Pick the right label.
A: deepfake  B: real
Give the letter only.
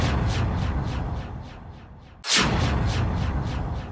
B